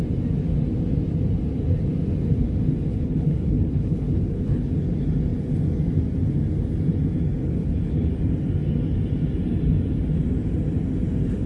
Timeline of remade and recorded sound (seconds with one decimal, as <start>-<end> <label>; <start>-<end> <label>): 0.0-2.9 recorded; 2.9-4.6 remade; 4.6-7.4 recorded; 7.4-8.1 remade; 8.1-11.5 recorded